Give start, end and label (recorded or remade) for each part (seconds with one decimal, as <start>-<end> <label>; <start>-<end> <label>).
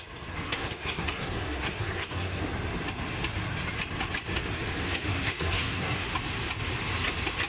0.0-0.4 recorded; 0.4-2.4 remade; 2.4-4.8 recorded; 4.8-6.1 remade; 6.1-7.5 recorded